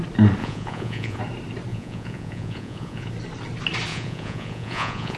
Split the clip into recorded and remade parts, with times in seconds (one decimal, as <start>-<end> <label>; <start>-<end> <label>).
0.0-0.4 recorded; 0.4-1.2 remade; 1.2-1.7 recorded; 1.7-3.1 remade; 3.1-3.9 recorded; 3.9-5.2 remade